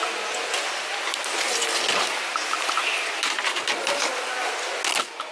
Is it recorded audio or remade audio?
recorded